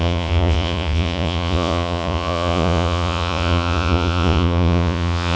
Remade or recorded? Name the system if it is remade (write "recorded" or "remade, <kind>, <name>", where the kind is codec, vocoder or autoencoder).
remade, vocoder, Vocos